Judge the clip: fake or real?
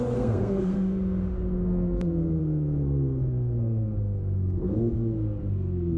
fake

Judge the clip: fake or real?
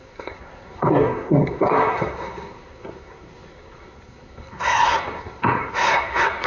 fake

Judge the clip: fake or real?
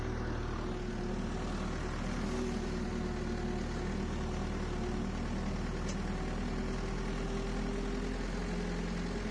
real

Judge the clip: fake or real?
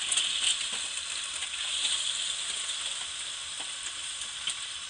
real